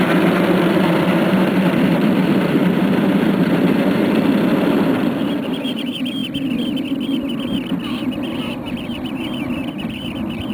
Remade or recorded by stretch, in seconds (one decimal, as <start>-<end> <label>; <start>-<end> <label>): 0.0-6.2 remade; 6.2-9.7 recorded; 9.7-10.5 remade